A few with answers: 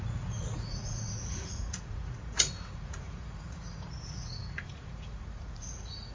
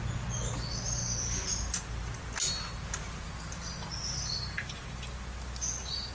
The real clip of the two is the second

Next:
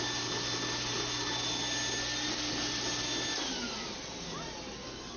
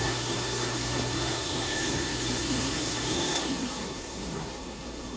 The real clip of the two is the first